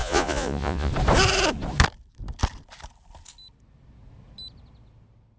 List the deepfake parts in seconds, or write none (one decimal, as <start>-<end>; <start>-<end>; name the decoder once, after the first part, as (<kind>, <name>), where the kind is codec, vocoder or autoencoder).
0.0-0.9 (vocoder, Vocos)